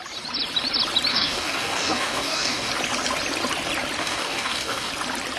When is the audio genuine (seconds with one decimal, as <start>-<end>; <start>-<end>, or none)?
0.0-1.1; 2.7-4.0; 4.9-5.4